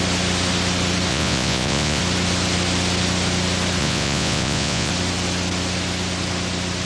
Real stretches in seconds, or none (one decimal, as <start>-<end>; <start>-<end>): 0.0-1.1; 2.0-3.8; 4.9-6.9